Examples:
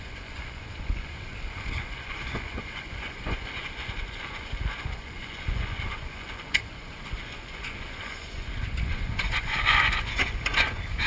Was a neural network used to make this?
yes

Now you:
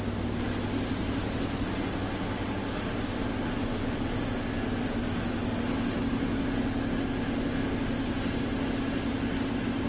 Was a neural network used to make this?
no